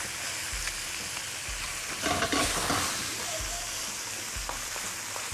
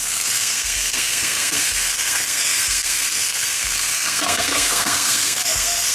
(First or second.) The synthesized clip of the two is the second